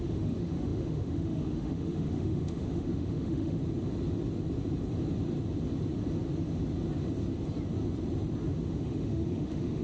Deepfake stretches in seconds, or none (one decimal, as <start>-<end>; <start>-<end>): 0.0-3.6; 8.5-9.8